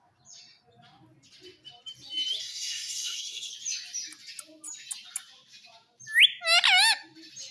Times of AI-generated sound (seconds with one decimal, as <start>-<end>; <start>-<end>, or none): 2.4-3.5